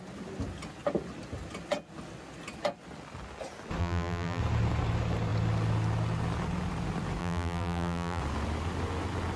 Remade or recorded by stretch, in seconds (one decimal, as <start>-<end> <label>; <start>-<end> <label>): 0.0-3.8 recorded; 3.8-4.4 remade; 4.4-7.2 recorded; 7.2-8.2 remade; 8.2-9.4 recorded